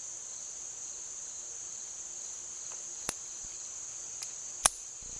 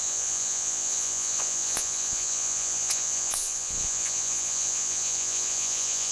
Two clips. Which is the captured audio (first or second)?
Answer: first